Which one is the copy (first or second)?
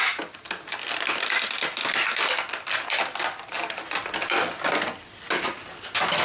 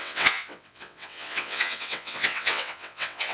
second